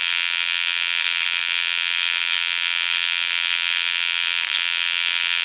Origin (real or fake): fake